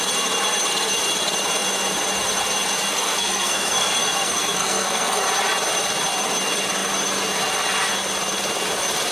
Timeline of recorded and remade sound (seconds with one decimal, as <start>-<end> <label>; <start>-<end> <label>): 0.0-2.9 recorded; 2.9-5.2 remade; 5.2-9.1 recorded